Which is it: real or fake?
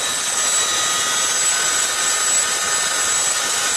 real